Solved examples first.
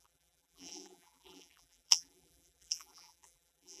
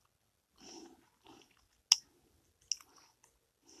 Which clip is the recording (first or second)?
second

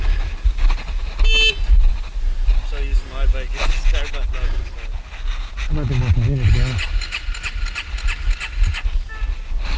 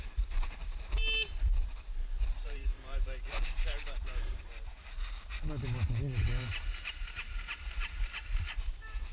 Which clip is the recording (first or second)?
first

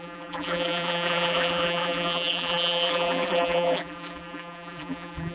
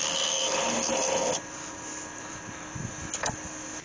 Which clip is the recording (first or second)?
second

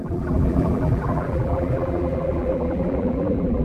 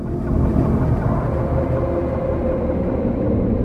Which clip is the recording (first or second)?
second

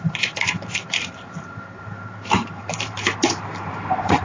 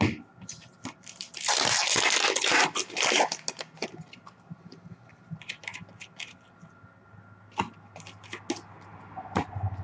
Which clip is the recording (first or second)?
second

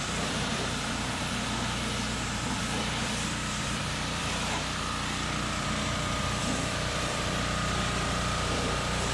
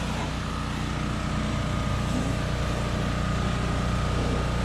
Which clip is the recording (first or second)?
second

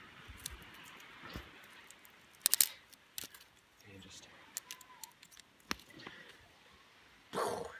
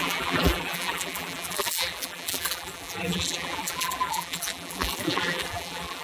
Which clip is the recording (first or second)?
first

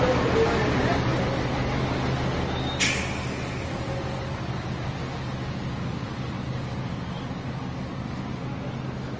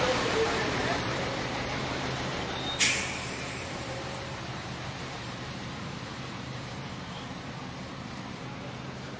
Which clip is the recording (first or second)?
first